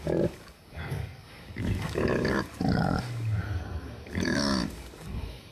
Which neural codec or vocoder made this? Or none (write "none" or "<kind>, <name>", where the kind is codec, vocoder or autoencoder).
codec, DAC